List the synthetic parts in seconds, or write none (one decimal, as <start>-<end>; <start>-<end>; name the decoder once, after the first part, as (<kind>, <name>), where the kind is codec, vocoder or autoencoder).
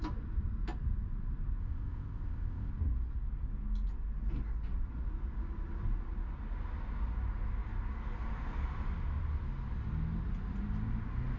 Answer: 1.6-2.7 (codec, ZipCodec)